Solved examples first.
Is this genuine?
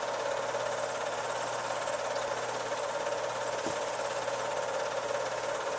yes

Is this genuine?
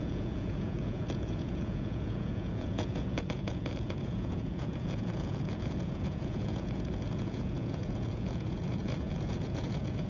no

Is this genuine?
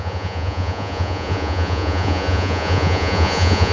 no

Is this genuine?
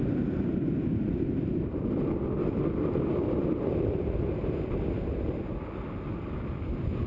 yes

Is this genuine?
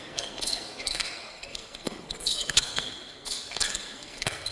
no